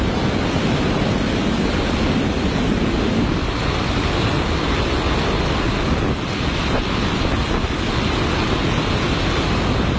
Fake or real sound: real